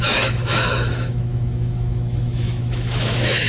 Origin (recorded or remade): remade